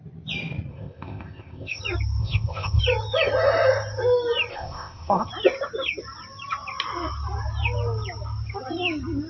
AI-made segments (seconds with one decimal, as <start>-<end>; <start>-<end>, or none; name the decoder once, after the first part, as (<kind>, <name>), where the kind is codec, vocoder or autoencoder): 0.7-1.8 (codec, ZipCodec); 2.2-2.8; 4.5-5.3